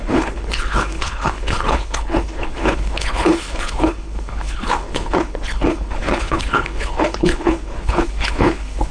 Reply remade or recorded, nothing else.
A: remade